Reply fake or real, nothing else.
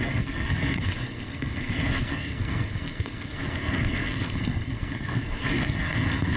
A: fake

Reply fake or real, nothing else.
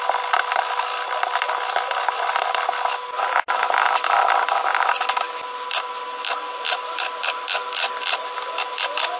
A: real